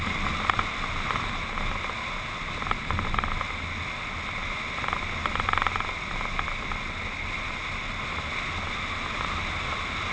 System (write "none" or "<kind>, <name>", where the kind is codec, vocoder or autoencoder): none